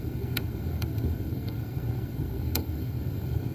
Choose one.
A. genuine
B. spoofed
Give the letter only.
B